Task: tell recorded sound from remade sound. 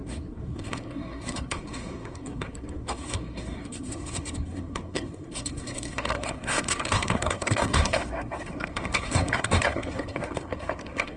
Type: remade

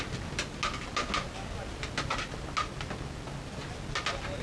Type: recorded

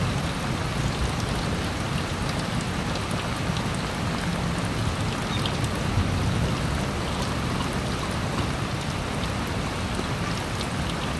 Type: recorded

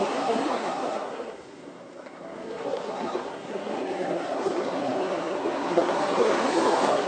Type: remade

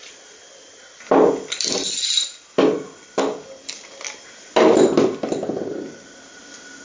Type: recorded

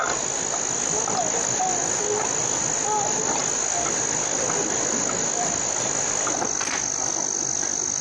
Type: recorded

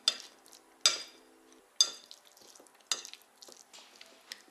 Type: recorded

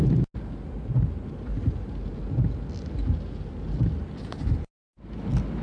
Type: recorded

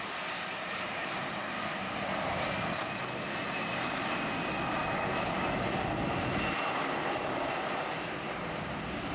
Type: recorded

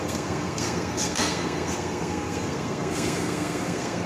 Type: remade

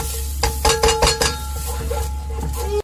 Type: recorded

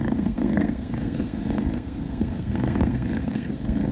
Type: remade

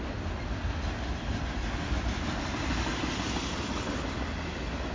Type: recorded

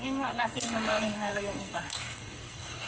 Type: remade